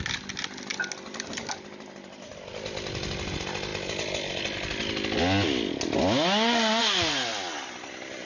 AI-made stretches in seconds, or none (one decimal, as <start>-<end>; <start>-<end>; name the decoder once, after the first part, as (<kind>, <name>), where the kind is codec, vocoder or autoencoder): none